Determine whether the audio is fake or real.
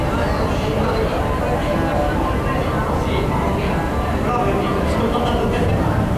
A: real